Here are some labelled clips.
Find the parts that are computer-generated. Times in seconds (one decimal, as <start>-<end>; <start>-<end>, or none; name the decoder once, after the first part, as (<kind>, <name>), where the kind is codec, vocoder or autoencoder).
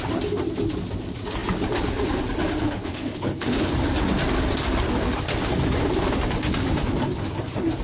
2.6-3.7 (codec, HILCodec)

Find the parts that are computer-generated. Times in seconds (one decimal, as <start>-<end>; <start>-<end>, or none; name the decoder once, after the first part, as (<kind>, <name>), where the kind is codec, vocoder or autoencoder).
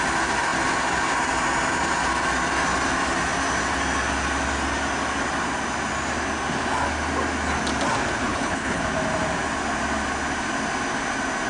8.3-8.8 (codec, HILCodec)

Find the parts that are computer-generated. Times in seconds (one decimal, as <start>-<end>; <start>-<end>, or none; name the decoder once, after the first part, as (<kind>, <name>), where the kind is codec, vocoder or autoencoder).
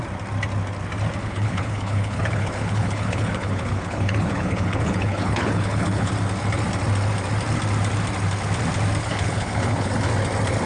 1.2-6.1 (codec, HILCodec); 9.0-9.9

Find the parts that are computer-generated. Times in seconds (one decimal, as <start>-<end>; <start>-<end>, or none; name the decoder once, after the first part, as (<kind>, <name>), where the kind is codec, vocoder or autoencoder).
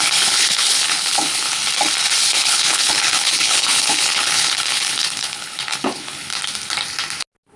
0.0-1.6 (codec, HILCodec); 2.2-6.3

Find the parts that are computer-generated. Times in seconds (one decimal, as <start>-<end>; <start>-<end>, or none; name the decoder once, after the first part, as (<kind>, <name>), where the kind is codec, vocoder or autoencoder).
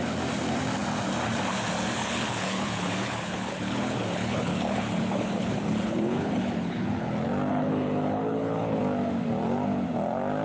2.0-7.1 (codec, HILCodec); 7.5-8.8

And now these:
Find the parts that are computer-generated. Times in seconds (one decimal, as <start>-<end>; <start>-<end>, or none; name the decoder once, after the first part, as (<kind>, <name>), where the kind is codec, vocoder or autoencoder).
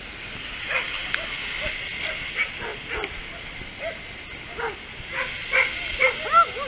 none